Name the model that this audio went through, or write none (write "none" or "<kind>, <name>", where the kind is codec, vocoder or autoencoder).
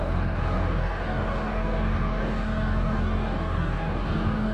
codec, DAC